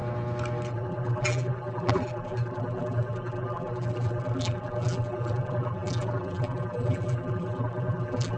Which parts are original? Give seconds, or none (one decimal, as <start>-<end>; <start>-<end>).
0.0-0.7